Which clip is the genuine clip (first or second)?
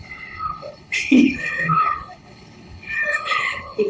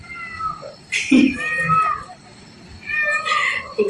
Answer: second